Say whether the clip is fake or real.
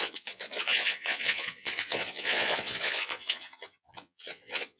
fake